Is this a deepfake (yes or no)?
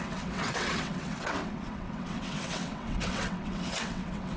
yes